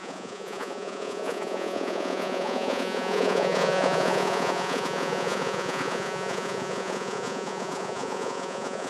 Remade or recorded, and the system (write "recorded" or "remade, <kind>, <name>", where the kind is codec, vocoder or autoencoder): remade, vocoder, Vocos